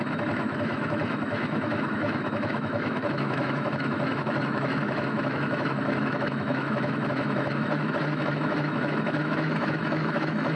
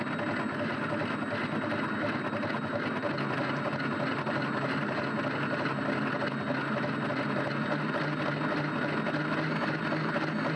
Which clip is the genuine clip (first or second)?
second